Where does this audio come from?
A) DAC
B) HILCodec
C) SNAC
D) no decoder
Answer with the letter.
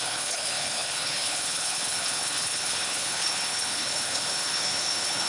B